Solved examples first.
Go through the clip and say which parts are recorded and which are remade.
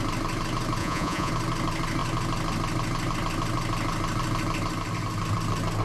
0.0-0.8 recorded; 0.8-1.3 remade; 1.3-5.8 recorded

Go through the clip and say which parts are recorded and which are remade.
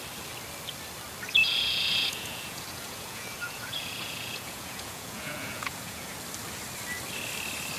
0.0-1.4 recorded; 1.4-6.1 remade; 6.1-7.8 recorded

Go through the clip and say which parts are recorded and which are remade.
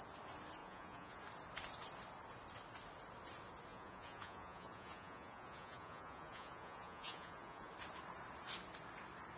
0.0-0.6 recorded; 0.6-1.2 remade; 1.2-3.7 recorded; 3.7-7.7 remade; 7.7-9.4 recorded